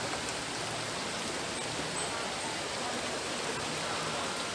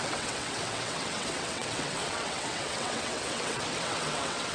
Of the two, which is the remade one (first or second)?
second